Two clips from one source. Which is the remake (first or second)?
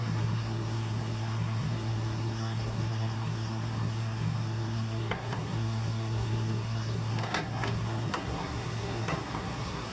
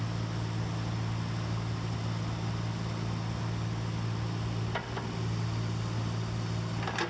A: first